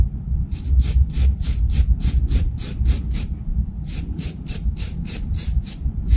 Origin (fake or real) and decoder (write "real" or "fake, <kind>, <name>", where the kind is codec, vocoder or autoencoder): real